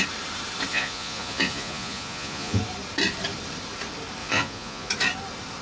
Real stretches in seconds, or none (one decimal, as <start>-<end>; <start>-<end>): 0.0-0.7; 2.6-4.2; 4.9-5.6

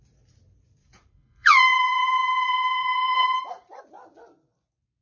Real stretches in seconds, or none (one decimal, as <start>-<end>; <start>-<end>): 0.0-0.8; 3.8-5.0

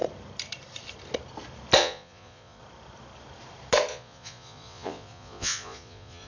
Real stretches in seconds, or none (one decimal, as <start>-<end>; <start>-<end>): 0.0-1.8; 2.6-3.9

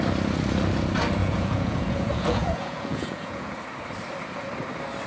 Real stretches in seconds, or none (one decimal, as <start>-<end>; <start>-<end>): 0.0-1.2; 3.6-5.1

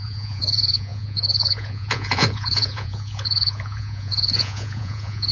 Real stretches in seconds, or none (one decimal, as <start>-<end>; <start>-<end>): none

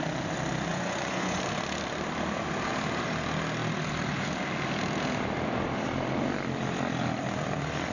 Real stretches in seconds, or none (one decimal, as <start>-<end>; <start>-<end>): 0.0-0.7; 1.4-7.9